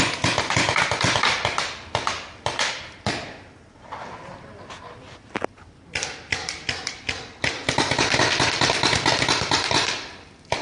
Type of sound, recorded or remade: recorded